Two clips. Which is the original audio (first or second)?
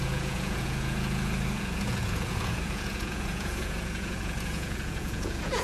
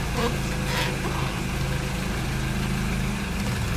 second